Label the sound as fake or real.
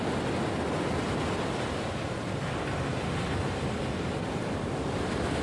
real